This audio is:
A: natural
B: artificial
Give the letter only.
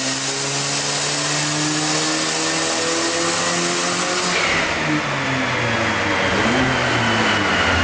A